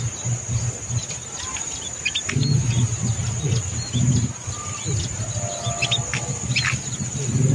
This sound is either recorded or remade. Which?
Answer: recorded